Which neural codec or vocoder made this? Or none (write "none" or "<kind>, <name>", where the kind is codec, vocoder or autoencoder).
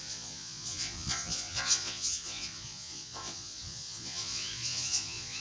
vocoder, Vocos